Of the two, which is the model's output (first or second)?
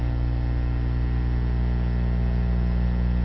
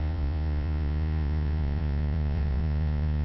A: second